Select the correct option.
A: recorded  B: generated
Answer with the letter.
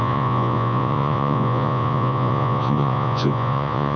B